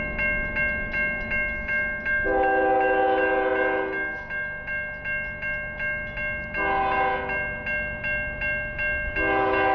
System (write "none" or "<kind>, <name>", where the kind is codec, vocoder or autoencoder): none